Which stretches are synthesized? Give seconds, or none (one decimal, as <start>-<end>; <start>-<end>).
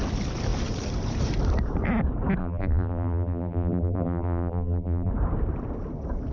2.4-5.1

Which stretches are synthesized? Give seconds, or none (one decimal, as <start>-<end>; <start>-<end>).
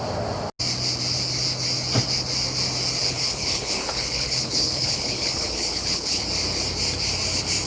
3.0-6.2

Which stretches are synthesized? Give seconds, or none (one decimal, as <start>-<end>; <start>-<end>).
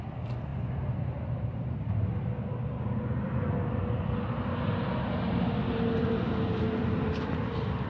none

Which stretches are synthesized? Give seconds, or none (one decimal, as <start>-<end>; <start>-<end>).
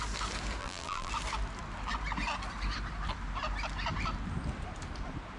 0.6-1.1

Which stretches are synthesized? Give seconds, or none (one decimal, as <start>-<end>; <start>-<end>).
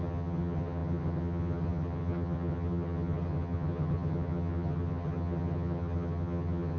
0.0-6.8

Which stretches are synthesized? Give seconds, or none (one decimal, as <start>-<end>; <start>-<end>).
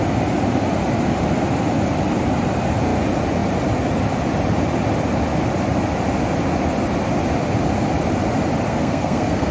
8.7-9.5